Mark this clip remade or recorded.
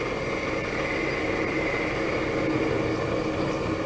recorded